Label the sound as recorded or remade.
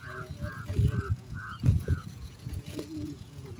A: remade